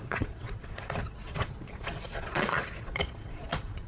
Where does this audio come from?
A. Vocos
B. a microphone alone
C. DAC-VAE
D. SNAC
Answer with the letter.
A